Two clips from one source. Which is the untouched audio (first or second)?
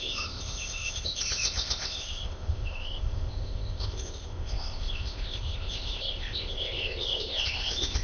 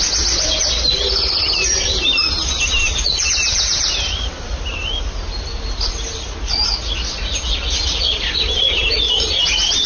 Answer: second